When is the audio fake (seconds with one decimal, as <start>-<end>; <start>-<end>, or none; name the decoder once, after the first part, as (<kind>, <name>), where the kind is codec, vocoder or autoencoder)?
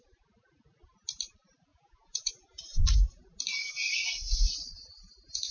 1.7-2.3 (vocoder, Vocos)